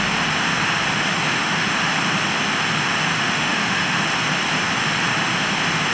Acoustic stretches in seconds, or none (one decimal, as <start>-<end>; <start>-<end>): 0.0-1.3; 1.9-3.1; 3.9-5.9